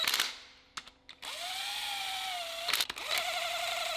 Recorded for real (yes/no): yes